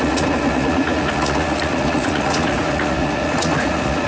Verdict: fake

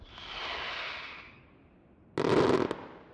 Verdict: real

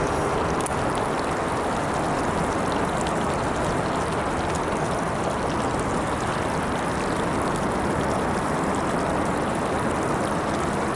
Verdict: real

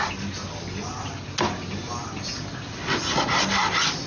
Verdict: real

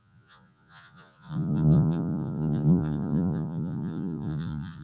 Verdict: fake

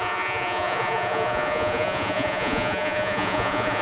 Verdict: fake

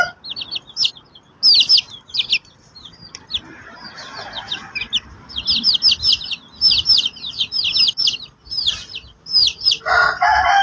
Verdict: real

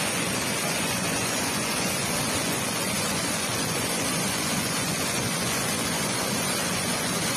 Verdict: fake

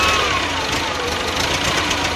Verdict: real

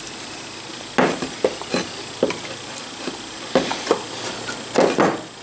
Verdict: real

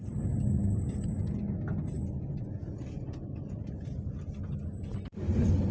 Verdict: real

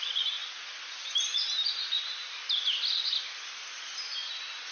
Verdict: real